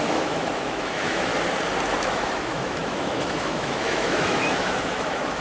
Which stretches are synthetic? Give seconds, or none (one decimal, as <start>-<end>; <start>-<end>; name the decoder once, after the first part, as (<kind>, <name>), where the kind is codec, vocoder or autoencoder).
0.0-1.3 (autoencoder, DAC-VAE); 2.0-5.4